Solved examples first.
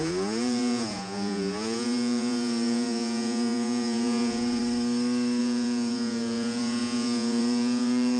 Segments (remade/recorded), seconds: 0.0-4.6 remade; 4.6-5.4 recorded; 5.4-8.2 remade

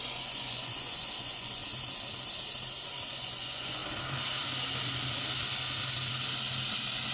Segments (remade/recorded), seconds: 0.0-1.6 remade; 1.6-3.1 recorded; 3.1-3.8 remade; 3.8-7.1 recorded

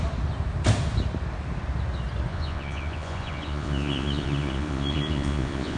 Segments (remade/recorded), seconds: 0.0-2.3 recorded; 2.3-5.8 remade

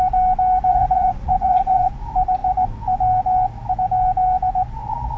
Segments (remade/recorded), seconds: 0.0-0.7 recorded; 0.7-1.9 remade; 1.9-5.2 recorded

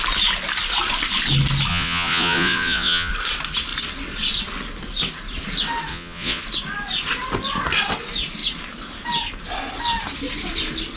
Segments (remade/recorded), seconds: 0.0-1.7 recorded; 1.7-3.1 remade; 3.1-5.9 recorded; 5.9-6.4 remade; 6.4-11.0 recorded

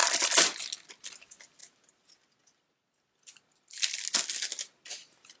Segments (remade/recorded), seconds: 0.0-5.4 recorded

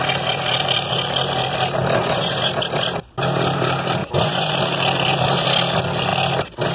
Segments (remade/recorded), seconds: 0.0-2.0 recorded; 2.0-2.5 remade; 2.5-4.0 recorded; 4.0-4.5 remade; 4.5-6.7 recorded

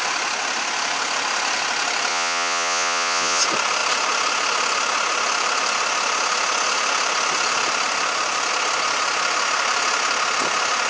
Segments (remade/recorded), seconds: 0.0-2.1 recorded; 2.1-3.4 remade; 3.4-10.9 recorded